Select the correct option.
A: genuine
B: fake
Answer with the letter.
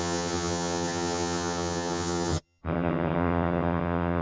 B